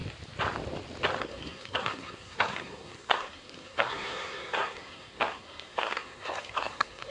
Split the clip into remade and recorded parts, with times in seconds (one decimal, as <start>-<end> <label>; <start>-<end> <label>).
0.0-1.2 recorded; 1.2-7.1 remade